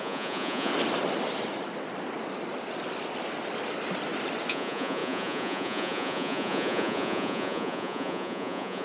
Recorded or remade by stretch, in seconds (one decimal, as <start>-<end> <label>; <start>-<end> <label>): 0.0-0.7 remade; 0.7-4.5 recorded; 4.5-8.8 remade